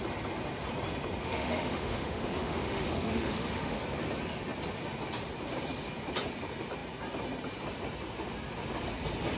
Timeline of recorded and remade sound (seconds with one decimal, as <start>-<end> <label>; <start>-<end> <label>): 0.0-1.2 recorded; 1.2-3.8 remade; 3.8-9.4 recorded